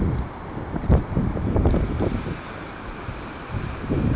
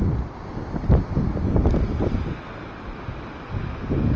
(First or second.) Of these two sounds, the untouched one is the second